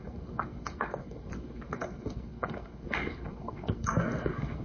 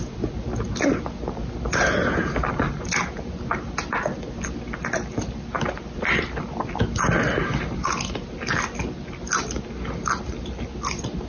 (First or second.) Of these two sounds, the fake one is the first